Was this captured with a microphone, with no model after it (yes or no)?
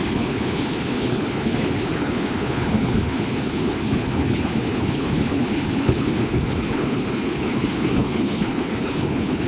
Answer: no